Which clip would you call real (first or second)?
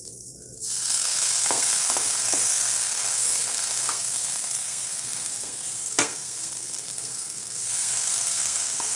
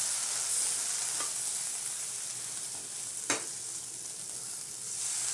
second